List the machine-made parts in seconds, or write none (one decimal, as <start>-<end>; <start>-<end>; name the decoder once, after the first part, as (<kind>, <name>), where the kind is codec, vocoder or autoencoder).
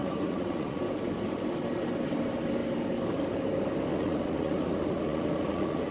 0.0-0.8 (vocoder, Vocos); 3.9-5.9